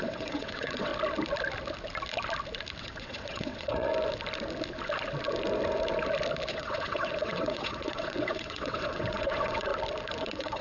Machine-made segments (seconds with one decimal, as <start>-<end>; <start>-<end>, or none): 0.0-0.9; 2.8-3.9; 6.5-9.7; 10.2-10.6